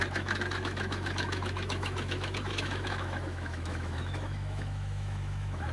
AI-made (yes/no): yes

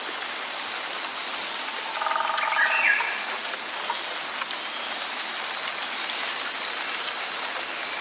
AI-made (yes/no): no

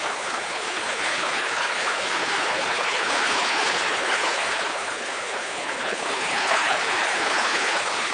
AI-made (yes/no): yes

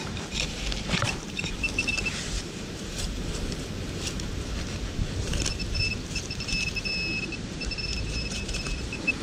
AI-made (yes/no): yes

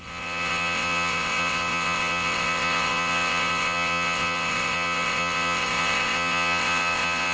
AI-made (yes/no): yes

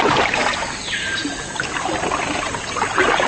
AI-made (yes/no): no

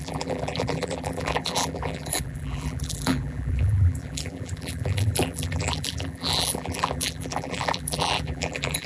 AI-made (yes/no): yes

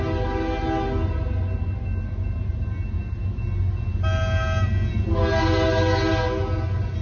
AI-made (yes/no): no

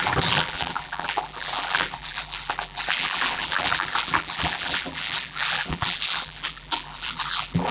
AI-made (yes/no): yes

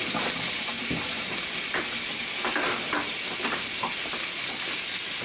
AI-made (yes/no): no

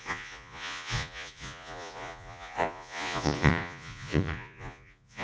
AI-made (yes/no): yes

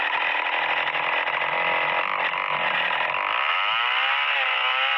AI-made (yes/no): no